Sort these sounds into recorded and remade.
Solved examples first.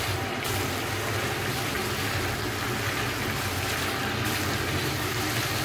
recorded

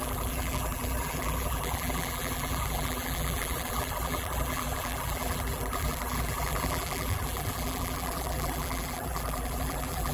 remade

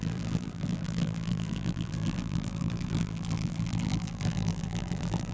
remade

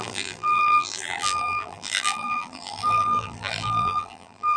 remade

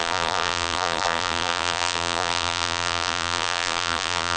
remade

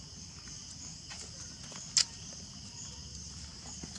recorded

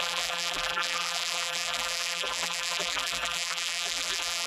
remade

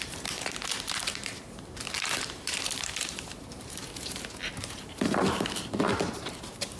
remade